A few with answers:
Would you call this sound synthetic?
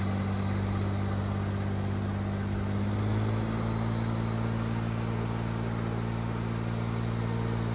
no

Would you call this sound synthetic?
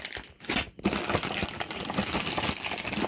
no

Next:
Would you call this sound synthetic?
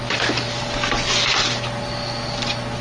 no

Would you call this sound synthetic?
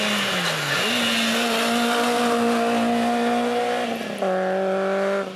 no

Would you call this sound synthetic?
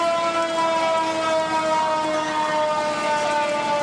no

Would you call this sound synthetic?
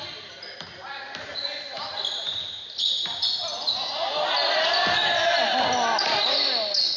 no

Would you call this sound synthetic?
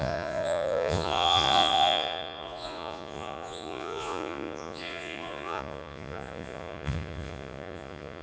yes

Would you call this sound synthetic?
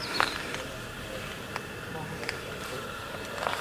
no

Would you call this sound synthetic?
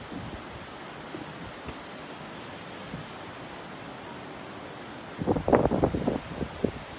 yes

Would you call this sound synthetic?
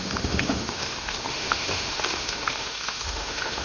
yes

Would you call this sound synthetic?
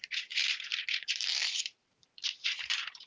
yes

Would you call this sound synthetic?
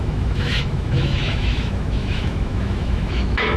yes